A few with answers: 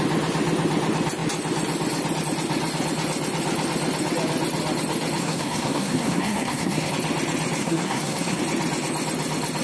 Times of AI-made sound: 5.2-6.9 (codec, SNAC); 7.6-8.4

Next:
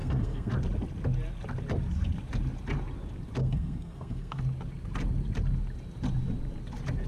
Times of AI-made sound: 0.0-0.5 (codec, SNAC); 3.4-4.4

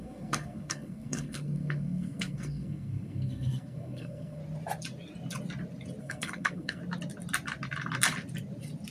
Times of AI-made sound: 0.0-4.4 (codec, SNAC); 6.0-6.8